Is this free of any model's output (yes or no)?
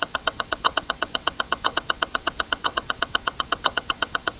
no